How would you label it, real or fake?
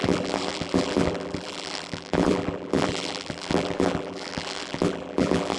fake